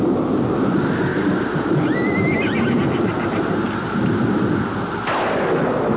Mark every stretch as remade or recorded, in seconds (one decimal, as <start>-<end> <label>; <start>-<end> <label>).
0.0-6.0 recorded